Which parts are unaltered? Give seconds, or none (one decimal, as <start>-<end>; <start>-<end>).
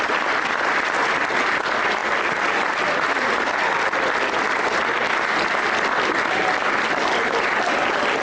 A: 0.0-8.2